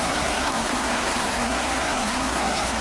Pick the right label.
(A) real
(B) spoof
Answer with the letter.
B